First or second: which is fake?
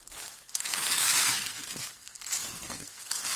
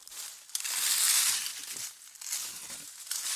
first